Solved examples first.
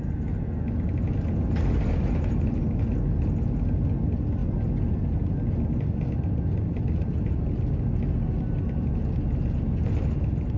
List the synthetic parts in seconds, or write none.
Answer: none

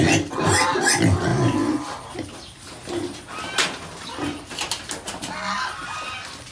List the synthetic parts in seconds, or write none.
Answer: 1.3-3.5 (vocoder, BigVGAN v2)

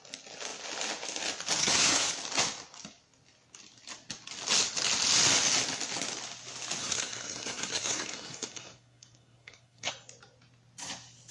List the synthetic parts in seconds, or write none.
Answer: 1.6-2.1 (codec, SNAC); 6.8-9.9